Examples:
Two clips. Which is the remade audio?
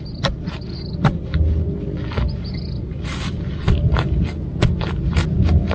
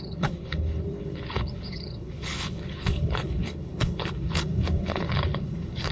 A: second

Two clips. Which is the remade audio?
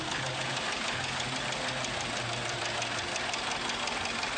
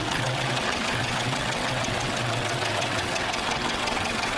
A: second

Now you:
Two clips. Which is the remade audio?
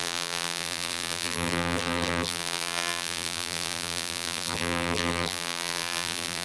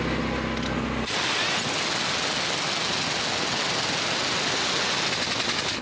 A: first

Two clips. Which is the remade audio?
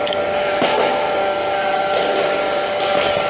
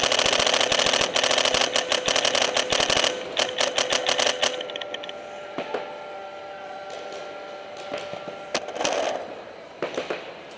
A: first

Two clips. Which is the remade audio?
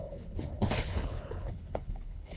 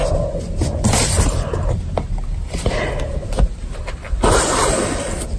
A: first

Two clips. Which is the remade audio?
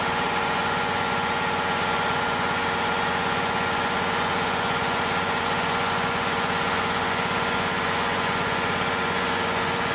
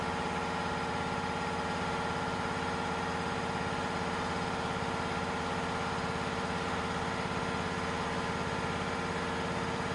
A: first